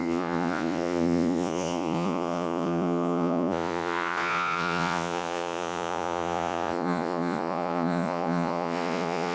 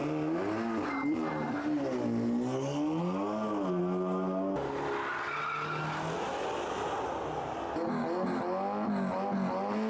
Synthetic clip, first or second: first